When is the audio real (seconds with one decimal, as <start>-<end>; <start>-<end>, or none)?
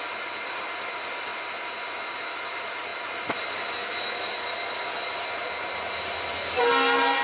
0.0-7.2